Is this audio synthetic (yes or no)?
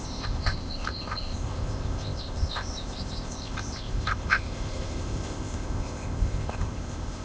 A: yes